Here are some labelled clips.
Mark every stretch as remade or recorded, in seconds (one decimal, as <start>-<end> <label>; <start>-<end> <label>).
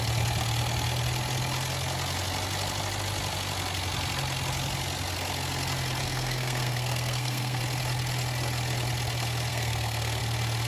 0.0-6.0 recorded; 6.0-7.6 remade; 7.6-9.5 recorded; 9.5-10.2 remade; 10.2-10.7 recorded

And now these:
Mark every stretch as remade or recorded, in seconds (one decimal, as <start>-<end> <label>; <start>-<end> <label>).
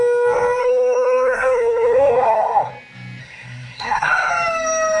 0.0-0.6 recorded; 0.6-2.7 remade; 2.7-3.2 recorded; 3.2-4.3 remade; 4.3-5.0 recorded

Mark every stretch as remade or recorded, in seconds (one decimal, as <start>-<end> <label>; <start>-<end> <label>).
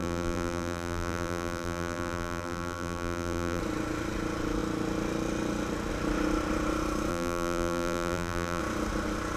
0.0-3.6 remade; 3.6-7.1 recorded; 7.1-8.6 remade; 8.6-9.4 recorded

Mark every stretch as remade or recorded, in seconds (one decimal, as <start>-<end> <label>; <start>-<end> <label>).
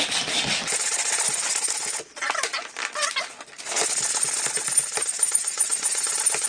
0.0-6.5 recorded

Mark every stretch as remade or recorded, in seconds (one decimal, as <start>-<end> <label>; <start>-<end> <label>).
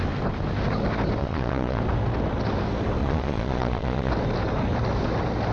0.0-1.2 recorded; 1.2-1.8 remade; 1.8-3.0 recorded; 3.0-4.1 remade; 4.1-5.5 recorded